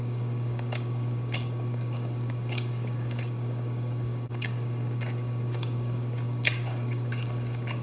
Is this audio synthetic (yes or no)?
yes